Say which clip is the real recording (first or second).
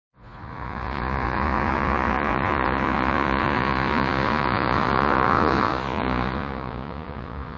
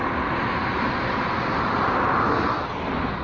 second